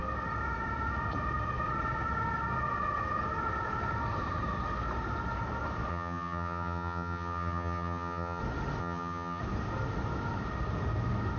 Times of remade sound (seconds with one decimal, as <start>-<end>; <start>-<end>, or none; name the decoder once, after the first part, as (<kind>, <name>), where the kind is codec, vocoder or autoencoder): 5.9-8.4 (vocoder, HiFi-GAN); 8.8-9.4

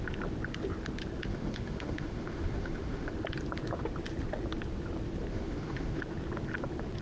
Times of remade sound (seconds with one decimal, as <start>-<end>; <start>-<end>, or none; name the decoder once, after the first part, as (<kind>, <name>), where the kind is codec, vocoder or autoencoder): 1.3-3.1 (autoencoder, DAC-VAE); 5.3-6.0

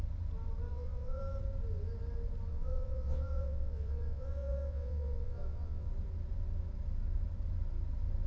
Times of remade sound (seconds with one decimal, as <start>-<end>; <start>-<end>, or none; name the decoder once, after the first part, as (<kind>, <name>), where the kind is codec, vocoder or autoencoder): 0.7-1.2 (vocoder, WaveNeXt); 2.5-5.9

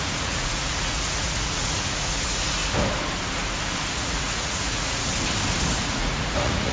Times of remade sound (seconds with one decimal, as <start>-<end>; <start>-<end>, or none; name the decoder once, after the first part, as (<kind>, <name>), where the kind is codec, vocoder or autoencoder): 0.0-2.6 (vocoder, Vocos); 3.9-5.1; 5.8-6.7

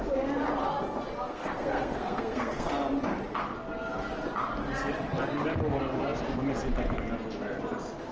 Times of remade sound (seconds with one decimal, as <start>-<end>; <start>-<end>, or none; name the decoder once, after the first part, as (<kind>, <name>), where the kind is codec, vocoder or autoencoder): 1.3-2.7 (codec, SNAC)

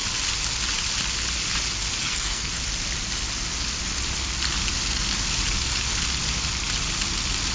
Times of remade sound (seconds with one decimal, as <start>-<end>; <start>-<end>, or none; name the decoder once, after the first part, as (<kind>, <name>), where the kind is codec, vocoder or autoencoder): 2.0-2.5 (codec, SNAC)